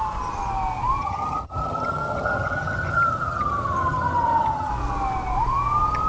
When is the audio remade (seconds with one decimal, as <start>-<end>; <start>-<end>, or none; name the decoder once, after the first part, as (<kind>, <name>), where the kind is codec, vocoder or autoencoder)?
1.0-4.7 (vocoder, HiFi-GAN)